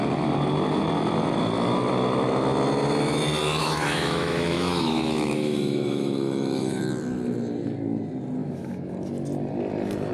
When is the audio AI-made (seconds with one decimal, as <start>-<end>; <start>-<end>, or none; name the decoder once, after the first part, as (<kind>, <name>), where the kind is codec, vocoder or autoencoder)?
3.6-6.8 (autoencoder, DAC-VAE); 8.4-8.9